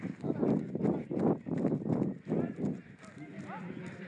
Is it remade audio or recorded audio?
recorded